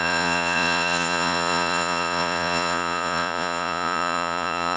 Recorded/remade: remade